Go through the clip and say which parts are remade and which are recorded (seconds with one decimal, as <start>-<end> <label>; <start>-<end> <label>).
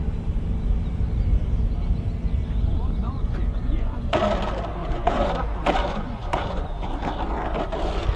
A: 0.0-3.0 recorded; 3.0-4.1 remade; 4.1-4.8 recorded; 4.8-5.3 remade; 5.3-5.8 recorded; 5.8-6.9 remade; 6.9-8.2 recorded